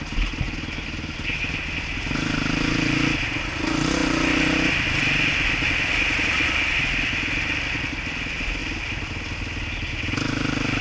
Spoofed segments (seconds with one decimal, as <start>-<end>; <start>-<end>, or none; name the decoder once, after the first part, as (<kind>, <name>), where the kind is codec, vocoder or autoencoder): none